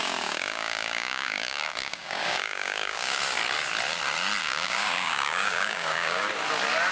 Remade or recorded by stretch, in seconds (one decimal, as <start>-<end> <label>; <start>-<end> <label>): 0.0-3.2 remade; 3.2-4.4 recorded; 4.4-6.3 remade; 6.3-6.9 recorded